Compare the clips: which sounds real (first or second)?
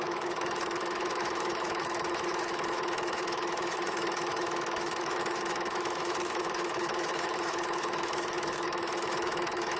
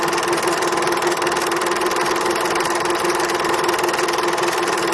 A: second